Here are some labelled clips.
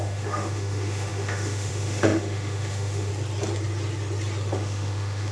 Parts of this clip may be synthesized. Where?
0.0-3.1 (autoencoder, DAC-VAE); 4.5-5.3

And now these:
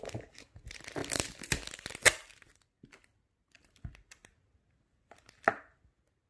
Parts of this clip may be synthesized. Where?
none

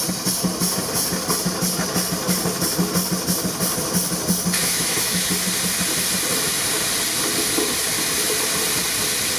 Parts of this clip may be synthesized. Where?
4.6-5.3 (autoencoder, DAC-VAE)

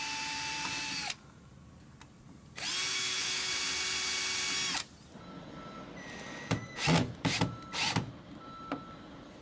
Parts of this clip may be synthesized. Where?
2.9-3.5 (autoencoder, DAC-VAE)

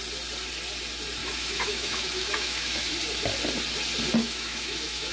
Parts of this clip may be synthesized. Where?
1.2-2.9 (autoencoder, DAC-VAE); 4.2-5.1